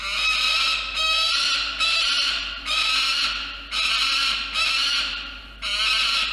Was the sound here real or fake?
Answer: real